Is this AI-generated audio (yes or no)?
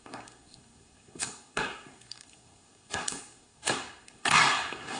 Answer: yes